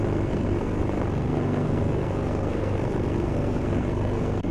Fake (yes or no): yes